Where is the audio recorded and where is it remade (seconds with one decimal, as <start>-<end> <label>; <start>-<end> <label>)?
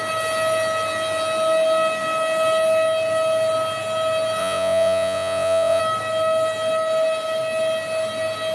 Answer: 0.0-4.4 recorded; 4.4-5.8 remade; 5.8-8.5 recorded